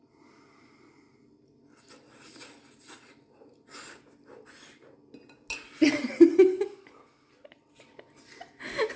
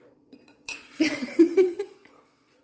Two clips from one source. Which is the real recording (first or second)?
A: first